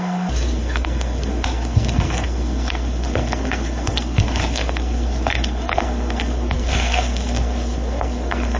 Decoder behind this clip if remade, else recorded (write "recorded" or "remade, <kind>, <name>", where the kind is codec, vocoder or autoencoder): remade, codec, SNAC